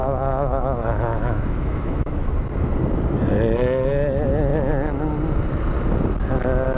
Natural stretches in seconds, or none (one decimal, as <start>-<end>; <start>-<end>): 2.3-6.8